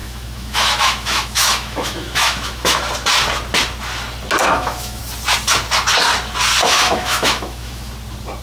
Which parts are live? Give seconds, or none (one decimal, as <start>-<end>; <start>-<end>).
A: 2.8-4.4; 5.0-6.6; 7.9-8.4